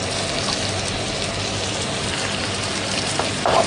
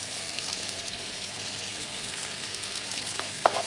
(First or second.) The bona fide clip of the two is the first